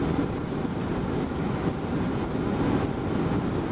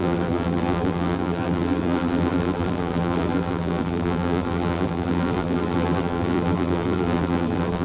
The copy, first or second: second